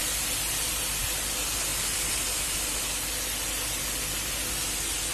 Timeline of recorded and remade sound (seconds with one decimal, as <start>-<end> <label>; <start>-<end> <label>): 0.0-1.7 recorded; 1.7-2.6 remade; 2.6-5.1 recorded